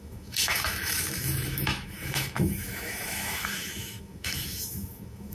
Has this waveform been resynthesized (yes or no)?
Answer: yes